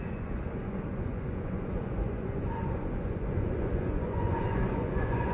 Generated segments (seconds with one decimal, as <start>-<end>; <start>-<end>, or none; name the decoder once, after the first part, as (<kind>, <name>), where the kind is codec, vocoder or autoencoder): 0.0-5.3 (vocoder, Vocos)